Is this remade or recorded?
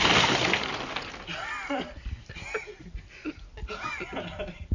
recorded